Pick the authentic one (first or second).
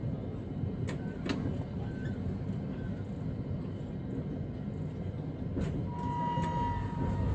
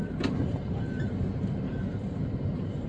first